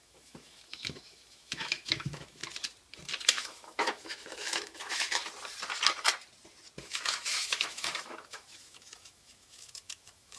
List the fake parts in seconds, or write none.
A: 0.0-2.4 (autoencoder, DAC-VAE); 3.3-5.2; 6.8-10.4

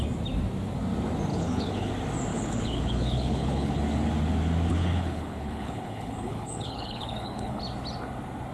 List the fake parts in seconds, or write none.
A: 1.3-1.9 (codec, HILCodec); 2.3-3.8; 4.7-7.6

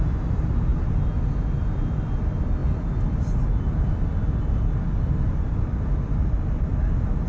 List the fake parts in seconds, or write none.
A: none